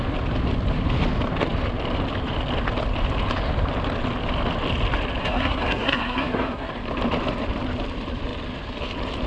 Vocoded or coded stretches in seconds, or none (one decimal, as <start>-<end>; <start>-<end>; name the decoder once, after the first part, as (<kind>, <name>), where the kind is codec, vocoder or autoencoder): 5.2-6.7 (codec, SNAC)